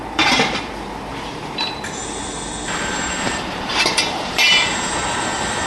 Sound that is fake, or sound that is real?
fake